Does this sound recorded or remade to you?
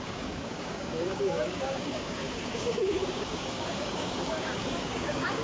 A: remade